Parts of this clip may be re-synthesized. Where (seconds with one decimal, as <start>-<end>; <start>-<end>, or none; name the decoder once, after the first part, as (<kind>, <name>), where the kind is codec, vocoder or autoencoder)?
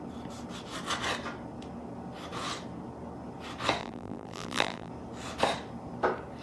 3.8-4.9 (vocoder, BigVGAN v2)